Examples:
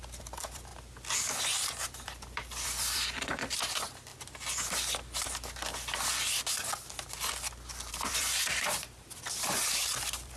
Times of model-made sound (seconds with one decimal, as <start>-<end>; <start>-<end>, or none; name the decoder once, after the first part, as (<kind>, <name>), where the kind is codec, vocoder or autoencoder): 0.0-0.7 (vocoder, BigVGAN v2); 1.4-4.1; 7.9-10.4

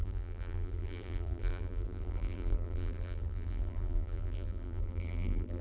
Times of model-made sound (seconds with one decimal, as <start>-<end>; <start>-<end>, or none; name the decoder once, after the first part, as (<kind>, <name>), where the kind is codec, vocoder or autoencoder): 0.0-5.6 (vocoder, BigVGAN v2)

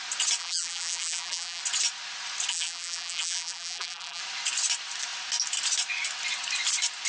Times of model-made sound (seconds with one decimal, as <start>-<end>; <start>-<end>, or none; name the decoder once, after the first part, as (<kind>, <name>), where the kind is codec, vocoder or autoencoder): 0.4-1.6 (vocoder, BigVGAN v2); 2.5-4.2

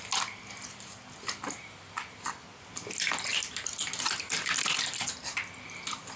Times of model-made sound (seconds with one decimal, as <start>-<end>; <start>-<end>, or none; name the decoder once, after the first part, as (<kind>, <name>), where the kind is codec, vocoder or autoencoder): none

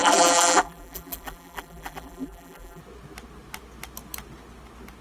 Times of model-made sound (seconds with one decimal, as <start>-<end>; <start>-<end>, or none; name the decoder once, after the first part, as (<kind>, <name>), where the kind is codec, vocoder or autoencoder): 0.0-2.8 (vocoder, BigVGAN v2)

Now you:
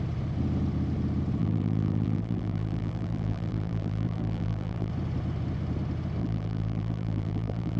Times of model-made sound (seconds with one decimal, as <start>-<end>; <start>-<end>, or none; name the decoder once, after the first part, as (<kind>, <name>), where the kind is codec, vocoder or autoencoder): 1.4-4.9 (vocoder, BigVGAN v2); 6.2-7.8